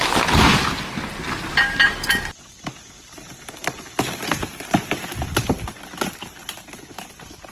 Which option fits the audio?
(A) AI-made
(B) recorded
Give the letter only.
B